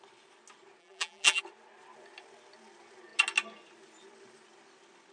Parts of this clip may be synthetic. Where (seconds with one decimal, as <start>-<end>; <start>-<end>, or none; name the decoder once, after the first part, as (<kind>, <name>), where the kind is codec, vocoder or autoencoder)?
0.8-1.4 (vocoder, BigVGAN v2)